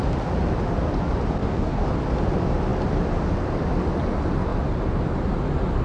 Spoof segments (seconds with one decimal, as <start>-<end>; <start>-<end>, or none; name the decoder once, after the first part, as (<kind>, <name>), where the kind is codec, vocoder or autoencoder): 1.4-1.9 (codec, DAC)